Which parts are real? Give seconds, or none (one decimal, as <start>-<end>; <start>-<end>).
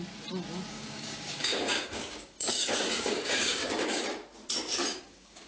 0.0-0.7; 4.0-4.9